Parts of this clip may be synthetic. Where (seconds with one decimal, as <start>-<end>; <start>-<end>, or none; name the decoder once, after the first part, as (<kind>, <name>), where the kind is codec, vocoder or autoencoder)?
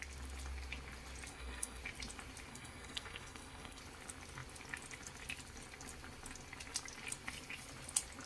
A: 1.3-1.8 (codec, SNAC); 2.5-3.8